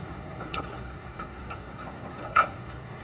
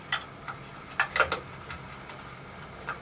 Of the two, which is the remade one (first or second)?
first